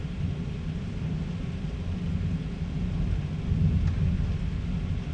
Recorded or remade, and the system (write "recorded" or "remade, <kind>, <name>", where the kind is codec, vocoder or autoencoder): recorded